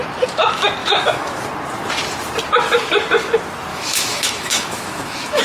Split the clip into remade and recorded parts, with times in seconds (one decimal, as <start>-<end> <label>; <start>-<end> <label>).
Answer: 0.0-0.8 recorded; 0.8-1.4 remade; 1.4-3.7 recorded; 3.7-5.4 remade